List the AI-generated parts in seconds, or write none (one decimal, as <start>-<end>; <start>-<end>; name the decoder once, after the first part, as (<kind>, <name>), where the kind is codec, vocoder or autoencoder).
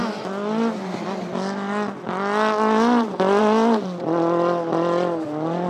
none